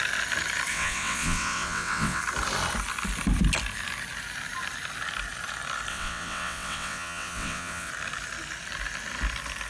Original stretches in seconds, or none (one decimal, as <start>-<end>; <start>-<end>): 0.0-0.7; 2.2-5.9; 7.9-9.7